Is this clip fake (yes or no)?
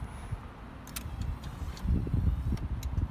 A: no